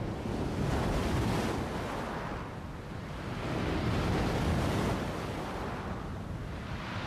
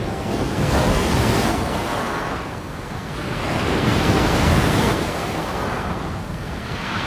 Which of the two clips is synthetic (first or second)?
second